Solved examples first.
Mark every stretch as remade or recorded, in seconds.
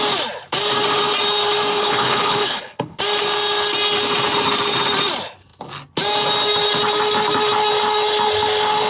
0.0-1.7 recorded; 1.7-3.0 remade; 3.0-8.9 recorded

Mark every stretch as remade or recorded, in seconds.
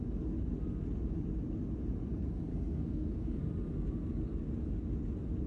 0.0-2.5 recorded; 2.5-3.4 remade; 3.4-5.5 recorded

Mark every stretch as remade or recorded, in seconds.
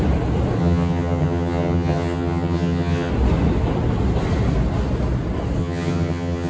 0.0-0.6 recorded; 0.6-3.1 remade; 3.1-5.6 recorded; 5.6-6.5 remade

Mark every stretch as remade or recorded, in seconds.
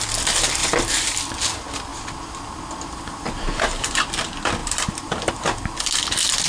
0.0-0.6 recorded; 0.6-1.2 remade; 1.2-4.6 recorded; 4.6-5.3 remade; 5.3-6.5 recorded